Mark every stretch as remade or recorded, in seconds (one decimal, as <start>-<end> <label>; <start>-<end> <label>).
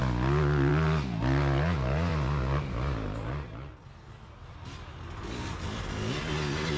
0.0-6.8 recorded